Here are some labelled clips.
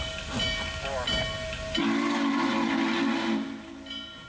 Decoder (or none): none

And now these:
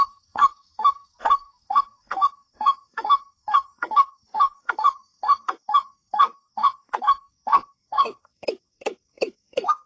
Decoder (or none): codec, SNAC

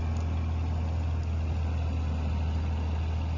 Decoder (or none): none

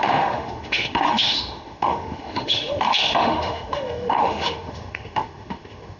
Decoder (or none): autoencoder, DAC-VAE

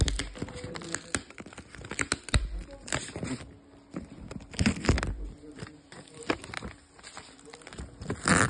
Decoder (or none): none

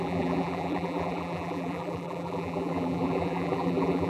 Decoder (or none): vocoder, BigVGAN v2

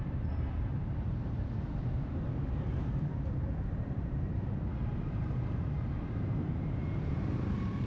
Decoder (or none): vocoder, BigVGAN v2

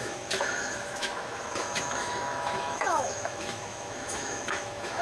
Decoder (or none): autoencoder, DAC-VAE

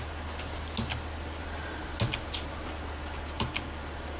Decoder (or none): none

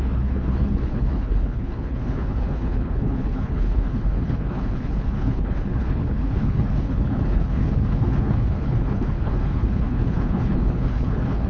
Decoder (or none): codec, HILCodec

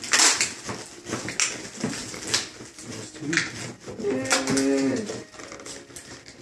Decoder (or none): none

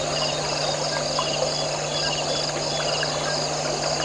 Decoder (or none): none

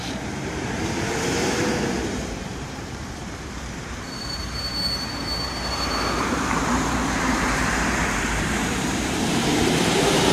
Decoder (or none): vocoder, BigVGAN v2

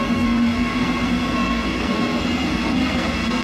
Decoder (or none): codec, SNAC